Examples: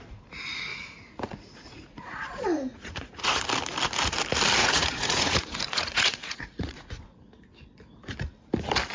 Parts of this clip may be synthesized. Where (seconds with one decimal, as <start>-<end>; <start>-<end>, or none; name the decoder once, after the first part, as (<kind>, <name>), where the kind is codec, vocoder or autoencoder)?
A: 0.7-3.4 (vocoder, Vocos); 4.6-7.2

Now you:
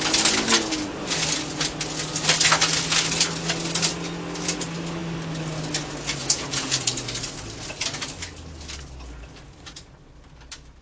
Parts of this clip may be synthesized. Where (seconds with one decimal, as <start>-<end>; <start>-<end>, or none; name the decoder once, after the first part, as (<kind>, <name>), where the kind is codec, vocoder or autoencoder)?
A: 6.2-6.9 (vocoder, Vocos)

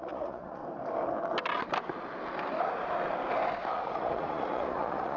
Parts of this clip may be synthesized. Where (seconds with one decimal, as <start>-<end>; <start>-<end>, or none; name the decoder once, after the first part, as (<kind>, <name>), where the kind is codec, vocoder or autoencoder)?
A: 0.0-0.6 (vocoder, Vocos); 3.7-5.2

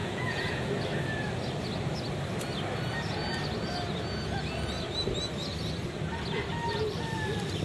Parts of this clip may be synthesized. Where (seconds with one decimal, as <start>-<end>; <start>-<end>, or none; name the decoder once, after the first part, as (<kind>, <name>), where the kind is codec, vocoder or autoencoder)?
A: 0.0-0.7 (vocoder, Vocos)

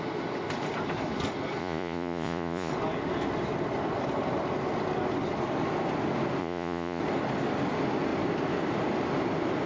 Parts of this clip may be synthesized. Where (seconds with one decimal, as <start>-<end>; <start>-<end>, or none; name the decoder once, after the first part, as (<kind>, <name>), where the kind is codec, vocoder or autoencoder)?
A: 1.6-2.7 (vocoder, Vocos); 6.4-7.0

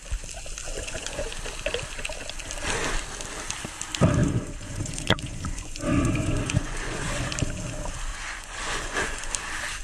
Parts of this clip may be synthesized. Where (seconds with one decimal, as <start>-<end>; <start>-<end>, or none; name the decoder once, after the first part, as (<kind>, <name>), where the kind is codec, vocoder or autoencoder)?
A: 0.7-1.3 (vocoder, Vocos); 4.2-7.3; 8.1-9.3